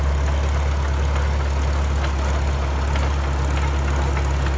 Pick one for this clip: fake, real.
real